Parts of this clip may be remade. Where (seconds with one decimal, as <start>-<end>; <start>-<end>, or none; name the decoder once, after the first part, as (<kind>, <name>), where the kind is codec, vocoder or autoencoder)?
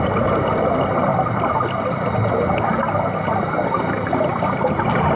none